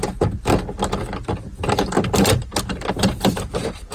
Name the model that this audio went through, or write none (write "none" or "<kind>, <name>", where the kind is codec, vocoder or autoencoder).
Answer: none